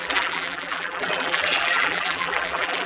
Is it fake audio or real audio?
fake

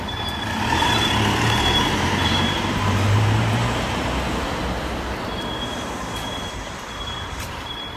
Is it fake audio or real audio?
fake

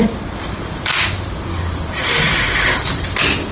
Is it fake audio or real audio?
real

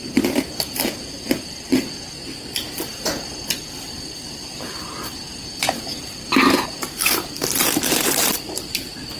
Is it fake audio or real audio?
fake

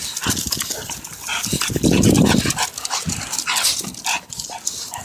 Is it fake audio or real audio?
real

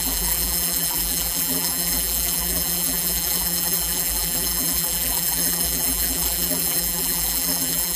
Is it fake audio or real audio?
fake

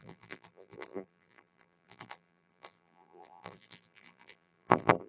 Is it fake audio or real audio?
fake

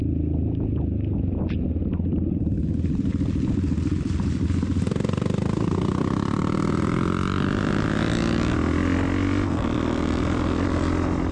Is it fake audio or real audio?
real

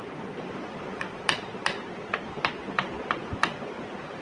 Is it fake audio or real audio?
fake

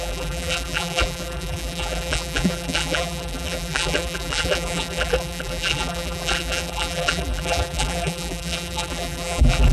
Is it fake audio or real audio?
fake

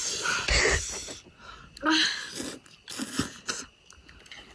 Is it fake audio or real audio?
real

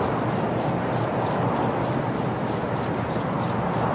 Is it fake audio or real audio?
real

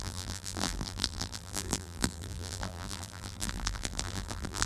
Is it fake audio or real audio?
fake